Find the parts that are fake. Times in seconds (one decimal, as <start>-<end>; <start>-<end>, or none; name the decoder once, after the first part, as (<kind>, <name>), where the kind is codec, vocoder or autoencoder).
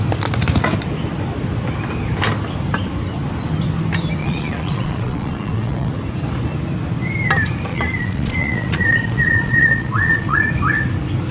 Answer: 4.2-5.9 (vocoder, Vocos); 7.7-10.5